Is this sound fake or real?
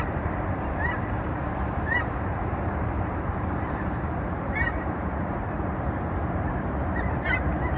fake